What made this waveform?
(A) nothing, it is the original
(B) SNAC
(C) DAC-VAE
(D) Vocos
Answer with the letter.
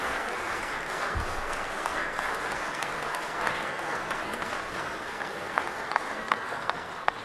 B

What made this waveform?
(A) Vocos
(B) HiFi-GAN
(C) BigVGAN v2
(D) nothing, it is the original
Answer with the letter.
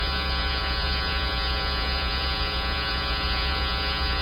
A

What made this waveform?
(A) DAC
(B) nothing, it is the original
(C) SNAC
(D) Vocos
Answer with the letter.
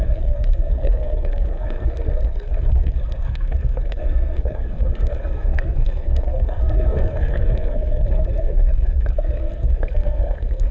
C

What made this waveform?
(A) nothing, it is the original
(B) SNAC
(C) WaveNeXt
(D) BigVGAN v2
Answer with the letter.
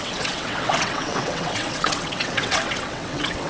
C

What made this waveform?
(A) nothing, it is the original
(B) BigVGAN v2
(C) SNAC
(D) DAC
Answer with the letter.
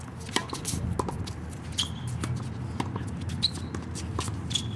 A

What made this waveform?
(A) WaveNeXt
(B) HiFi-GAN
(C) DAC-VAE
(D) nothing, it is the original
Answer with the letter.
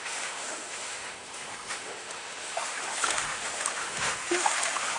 C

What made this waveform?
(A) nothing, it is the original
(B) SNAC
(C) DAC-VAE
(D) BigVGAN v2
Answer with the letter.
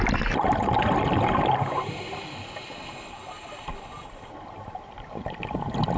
A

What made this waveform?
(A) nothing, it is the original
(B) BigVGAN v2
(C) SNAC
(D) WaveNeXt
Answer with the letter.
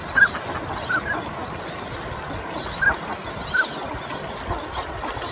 A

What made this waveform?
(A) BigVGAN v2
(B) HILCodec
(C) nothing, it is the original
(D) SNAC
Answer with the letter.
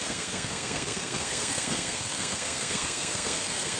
D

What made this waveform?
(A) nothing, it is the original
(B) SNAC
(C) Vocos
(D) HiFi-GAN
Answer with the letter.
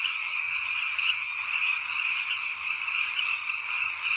D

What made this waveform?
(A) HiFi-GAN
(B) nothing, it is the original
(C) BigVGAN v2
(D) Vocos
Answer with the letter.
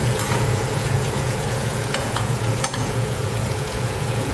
D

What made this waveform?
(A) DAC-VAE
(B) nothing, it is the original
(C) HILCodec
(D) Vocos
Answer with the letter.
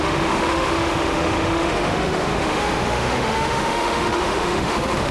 A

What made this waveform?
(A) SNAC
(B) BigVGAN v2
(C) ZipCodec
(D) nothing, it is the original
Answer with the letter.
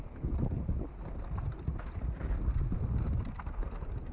D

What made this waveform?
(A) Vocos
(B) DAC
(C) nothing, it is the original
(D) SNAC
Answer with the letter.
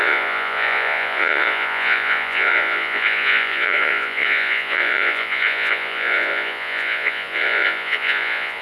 A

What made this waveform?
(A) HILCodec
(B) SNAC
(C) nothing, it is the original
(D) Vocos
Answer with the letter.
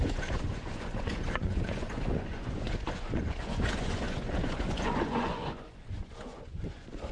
D